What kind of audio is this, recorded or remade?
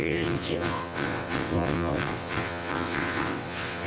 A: remade